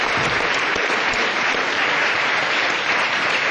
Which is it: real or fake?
fake